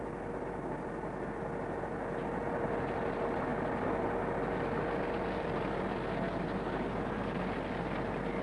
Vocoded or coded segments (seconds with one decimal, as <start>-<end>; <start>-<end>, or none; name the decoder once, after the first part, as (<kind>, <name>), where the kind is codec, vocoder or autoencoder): none